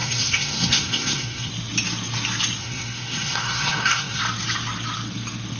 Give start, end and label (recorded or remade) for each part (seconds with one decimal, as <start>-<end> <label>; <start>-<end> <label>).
0.0-1.5 remade; 1.5-2.6 recorded; 2.6-4.2 remade; 4.2-5.6 recorded